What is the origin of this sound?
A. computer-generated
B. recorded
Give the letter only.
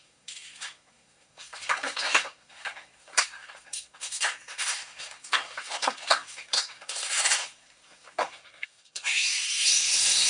A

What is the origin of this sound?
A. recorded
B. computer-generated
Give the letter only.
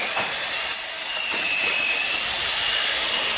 A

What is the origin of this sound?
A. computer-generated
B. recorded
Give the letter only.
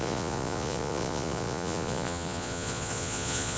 A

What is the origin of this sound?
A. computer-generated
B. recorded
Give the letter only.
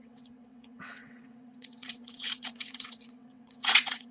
A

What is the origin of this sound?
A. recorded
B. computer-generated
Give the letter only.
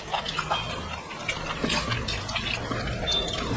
A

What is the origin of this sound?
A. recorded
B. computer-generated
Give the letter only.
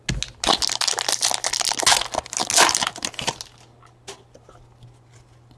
A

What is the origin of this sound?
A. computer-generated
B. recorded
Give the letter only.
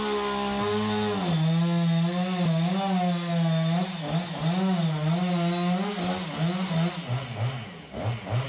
B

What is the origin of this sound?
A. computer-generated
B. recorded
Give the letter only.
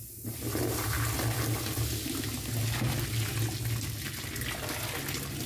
B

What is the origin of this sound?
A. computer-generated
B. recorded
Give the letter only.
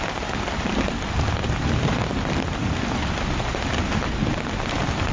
B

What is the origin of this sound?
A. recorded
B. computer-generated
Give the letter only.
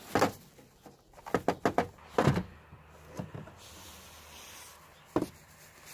A